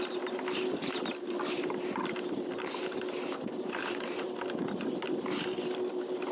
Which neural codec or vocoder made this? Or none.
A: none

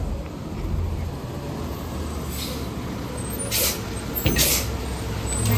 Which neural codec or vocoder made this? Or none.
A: none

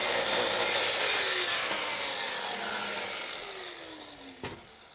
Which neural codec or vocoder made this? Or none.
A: none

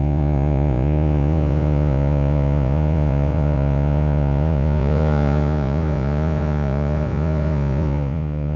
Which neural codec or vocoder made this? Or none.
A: vocoder, Vocos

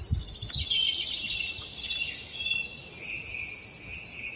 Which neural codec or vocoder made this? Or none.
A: none